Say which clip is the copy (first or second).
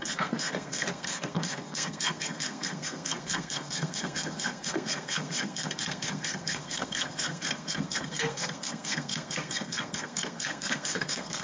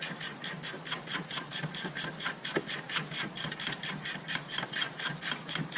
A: first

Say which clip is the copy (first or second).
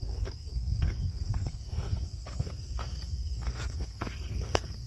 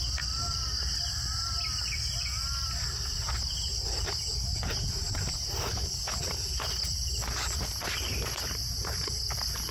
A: first